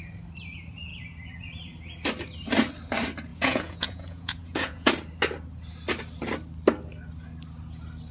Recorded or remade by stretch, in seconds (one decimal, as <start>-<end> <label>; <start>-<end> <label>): 0.0-3.3 recorded; 3.3-4.9 remade; 4.9-8.1 recorded